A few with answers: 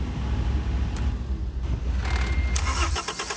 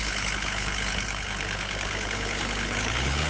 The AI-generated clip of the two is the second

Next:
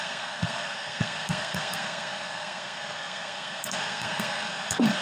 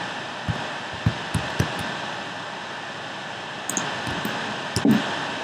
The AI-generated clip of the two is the first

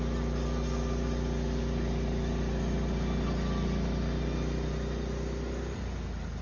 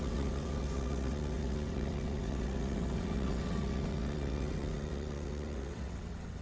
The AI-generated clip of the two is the second